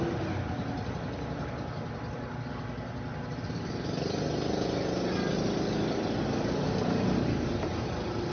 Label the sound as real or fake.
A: real